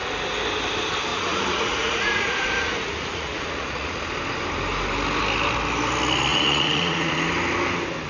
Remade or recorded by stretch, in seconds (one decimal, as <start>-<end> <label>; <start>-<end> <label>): 0.0-1.1 recorded; 1.1-4.0 remade; 4.0-6.3 recorded; 6.3-7.2 remade; 7.2-8.1 recorded